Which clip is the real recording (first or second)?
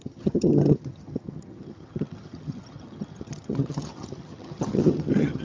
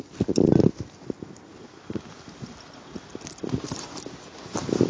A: second